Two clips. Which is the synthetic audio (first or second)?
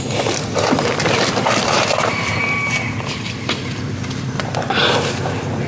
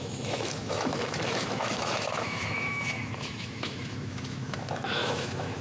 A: second